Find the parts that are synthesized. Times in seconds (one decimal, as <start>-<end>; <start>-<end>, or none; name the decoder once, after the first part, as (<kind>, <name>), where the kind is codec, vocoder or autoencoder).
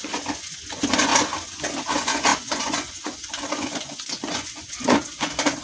0.0-1.1 (vocoder, Vocos); 1.8-5.6